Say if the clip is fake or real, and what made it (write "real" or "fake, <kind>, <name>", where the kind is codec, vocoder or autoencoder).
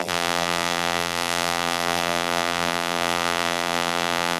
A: fake, vocoder, BigVGAN v2